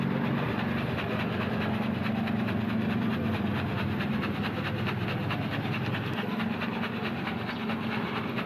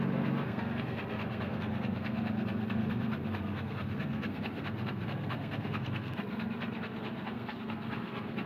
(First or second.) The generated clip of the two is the second